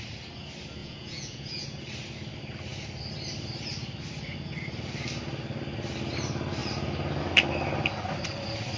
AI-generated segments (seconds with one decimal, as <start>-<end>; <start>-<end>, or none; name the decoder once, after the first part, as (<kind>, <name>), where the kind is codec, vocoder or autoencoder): 0.8-1.8 (vocoder, Vocos)